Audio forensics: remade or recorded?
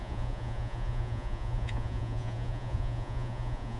remade